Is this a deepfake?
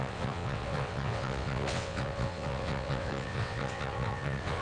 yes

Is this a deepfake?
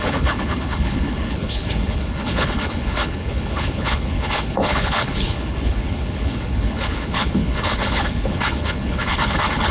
yes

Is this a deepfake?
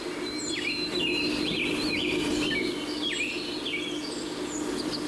no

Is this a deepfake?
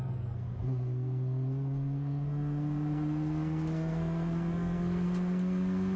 yes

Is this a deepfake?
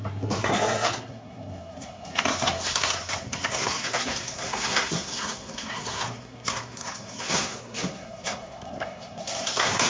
yes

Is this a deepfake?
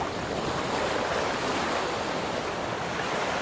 no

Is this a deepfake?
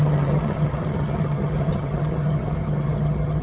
yes